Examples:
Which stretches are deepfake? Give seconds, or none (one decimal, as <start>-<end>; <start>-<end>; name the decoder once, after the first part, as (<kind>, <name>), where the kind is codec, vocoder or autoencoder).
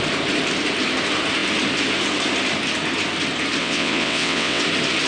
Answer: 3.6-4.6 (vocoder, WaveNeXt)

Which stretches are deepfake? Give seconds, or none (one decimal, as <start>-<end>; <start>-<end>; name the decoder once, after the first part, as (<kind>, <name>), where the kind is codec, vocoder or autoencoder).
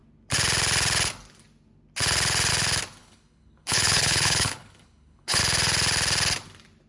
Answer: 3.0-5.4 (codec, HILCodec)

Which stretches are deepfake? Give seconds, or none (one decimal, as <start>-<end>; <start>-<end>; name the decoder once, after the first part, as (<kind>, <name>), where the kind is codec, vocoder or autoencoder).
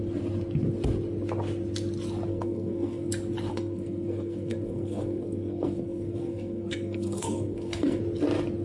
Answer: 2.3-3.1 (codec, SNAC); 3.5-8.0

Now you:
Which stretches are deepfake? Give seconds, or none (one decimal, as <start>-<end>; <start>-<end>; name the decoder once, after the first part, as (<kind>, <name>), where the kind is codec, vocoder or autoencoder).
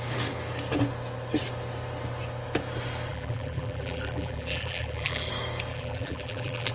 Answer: 3.1-5.3 (vocoder, BigVGAN v2); 5.7-6.7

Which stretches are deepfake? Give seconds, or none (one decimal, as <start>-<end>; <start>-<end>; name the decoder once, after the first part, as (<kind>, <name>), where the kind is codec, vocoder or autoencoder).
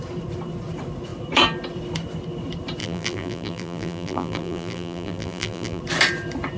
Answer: 2.8-5.8 (vocoder, BigVGAN v2)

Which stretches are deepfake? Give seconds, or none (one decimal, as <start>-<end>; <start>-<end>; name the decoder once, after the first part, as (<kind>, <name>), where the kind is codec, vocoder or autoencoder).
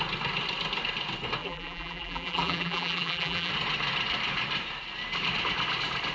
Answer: 1.4-3.5 (vocoder, BigVGAN v2)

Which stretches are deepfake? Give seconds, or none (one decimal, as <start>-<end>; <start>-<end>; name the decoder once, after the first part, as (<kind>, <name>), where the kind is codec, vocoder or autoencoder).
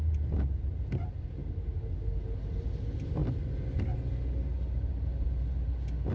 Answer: none